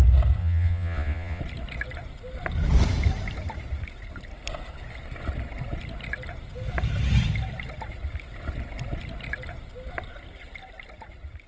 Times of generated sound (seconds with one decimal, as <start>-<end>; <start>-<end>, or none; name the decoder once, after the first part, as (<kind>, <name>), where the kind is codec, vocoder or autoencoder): 0.4-1.4 (vocoder, Vocos)